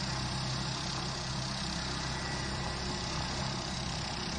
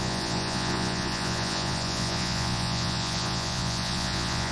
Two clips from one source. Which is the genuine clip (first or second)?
first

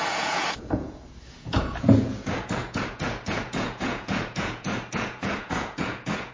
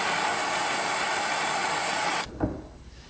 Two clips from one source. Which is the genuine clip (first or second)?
second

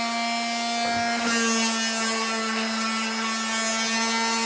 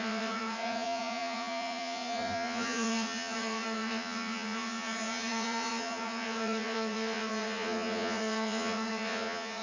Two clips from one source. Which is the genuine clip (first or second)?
first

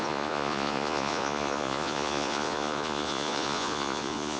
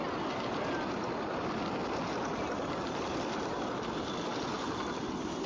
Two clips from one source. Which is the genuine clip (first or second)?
second